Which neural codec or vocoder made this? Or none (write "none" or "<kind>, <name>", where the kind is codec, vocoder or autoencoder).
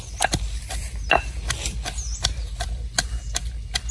none